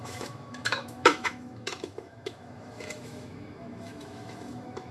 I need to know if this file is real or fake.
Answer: fake